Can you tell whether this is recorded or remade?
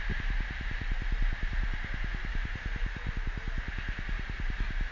recorded